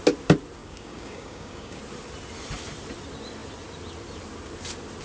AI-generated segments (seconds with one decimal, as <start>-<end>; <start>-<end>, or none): 0.6-1.8